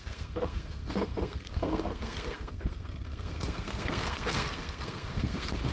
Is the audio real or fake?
fake